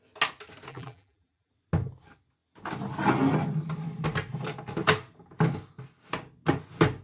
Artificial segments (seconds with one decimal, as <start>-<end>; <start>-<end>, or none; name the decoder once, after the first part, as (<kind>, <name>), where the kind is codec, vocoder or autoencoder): 0.7-1.5 (vocoder, BigVGAN v2)